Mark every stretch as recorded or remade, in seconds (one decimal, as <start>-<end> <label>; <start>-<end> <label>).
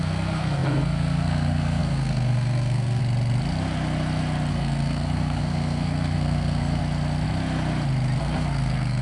0.0-3.0 remade; 3.0-4.5 recorded; 4.5-6.8 remade; 6.8-8.2 recorded; 8.2-9.0 remade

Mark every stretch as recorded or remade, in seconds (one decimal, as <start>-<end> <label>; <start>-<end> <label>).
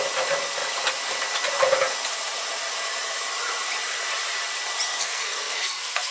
0.0-4.9 recorded; 4.9-6.1 remade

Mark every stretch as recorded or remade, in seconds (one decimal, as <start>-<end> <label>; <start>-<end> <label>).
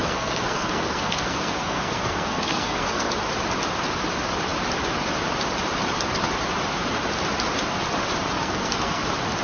0.0-3.1 remade; 3.1-8.4 recorded; 8.4-9.0 remade; 9.0-9.4 recorded